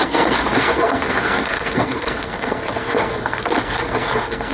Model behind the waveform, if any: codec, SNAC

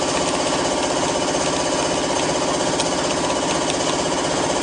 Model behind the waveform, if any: none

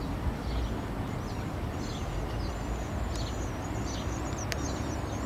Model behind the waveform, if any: none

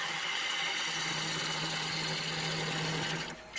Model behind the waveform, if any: none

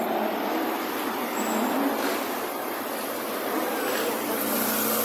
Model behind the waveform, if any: none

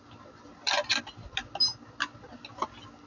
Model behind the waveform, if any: none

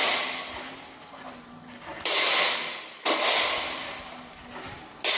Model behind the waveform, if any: none